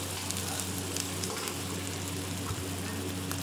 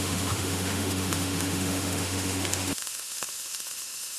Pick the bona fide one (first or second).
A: first